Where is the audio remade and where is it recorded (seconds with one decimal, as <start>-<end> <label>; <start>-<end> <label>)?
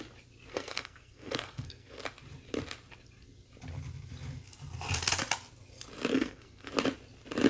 0.0-0.5 recorded; 0.5-2.0 remade; 2.0-6.1 recorded; 6.1-6.7 remade; 6.7-7.5 recorded